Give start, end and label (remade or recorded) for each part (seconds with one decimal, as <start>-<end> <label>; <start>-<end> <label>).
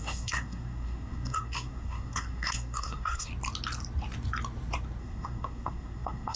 0.0-3.3 remade; 3.3-5.0 recorded; 5.0-6.4 remade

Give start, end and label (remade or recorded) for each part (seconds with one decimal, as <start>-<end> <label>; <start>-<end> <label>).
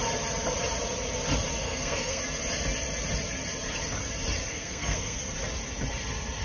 0.0-1.6 recorded; 1.6-2.2 remade; 2.2-4.5 recorded; 4.5-5.2 remade; 5.2-6.4 recorded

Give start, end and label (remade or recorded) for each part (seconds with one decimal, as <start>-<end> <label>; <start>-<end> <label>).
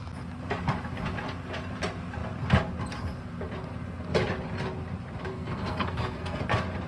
0.0-5.3 recorded; 5.3-6.4 remade; 6.4-6.9 recorded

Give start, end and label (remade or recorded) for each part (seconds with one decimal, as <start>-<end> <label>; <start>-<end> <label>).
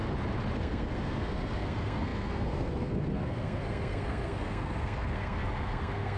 0.0-0.6 recorded; 0.6-6.2 remade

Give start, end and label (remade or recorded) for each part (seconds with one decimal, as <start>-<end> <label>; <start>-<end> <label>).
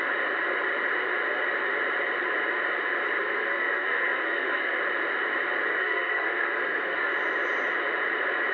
0.0-3.2 recorded; 3.2-4.8 remade; 4.8-5.7 recorded; 5.7-7.1 remade; 7.1-8.5 recorded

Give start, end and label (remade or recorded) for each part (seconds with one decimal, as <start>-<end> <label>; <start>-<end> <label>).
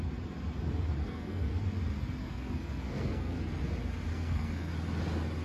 0.0-1.0 recorded; 1.0-1.6 remade; 1.6-2.2 recorded; 2.2-3.6 remade; 3.6-4.1 recorded; 4.1-4.7 remade; 4.7-5.4 recorded